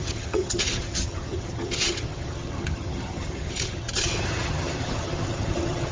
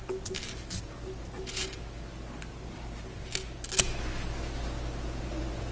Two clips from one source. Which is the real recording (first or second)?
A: second